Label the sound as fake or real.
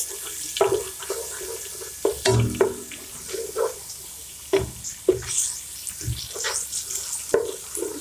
real